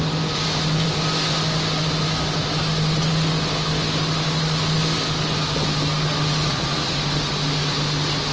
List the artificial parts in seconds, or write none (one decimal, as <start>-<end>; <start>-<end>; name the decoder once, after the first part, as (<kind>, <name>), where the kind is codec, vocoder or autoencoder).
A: 6.5-7.0 (vocoder, Vocos)